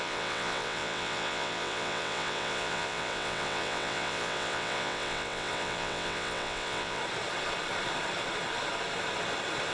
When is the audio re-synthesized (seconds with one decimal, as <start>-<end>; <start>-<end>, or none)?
0.0-7.0